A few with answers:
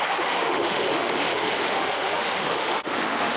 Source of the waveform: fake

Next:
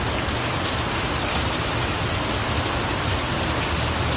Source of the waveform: real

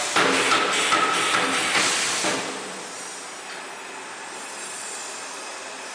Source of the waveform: real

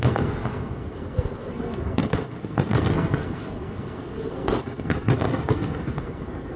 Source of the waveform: fake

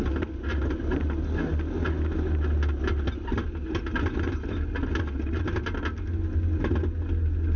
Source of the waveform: real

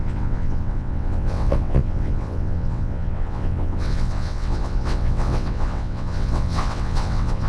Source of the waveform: fake